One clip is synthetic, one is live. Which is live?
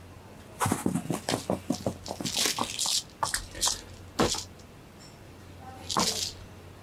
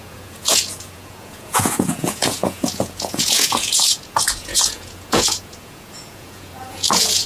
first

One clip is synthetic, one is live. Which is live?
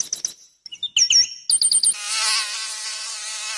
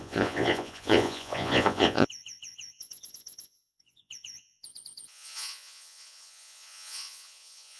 first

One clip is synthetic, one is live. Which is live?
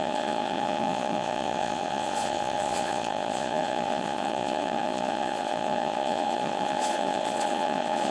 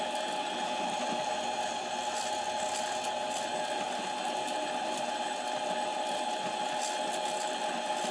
second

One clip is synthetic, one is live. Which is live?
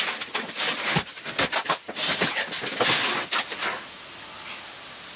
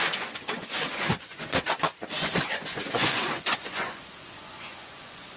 first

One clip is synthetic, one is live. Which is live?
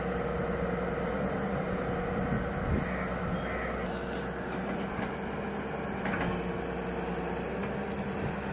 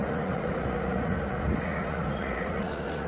first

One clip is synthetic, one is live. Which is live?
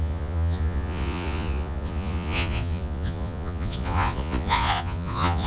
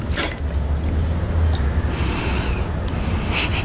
second